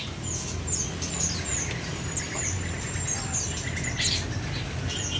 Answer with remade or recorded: recorded